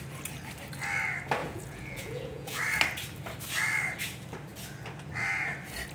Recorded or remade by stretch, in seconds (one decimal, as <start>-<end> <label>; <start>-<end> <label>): 0.0-1.4 recorded; 1.4-2.6 remade; 2.6-5.9 recorded